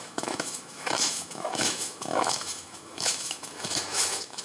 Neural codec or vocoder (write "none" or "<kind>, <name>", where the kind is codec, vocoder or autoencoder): autoencoder, DAC-VAE